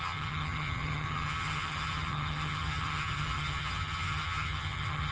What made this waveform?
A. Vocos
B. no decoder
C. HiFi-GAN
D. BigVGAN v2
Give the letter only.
C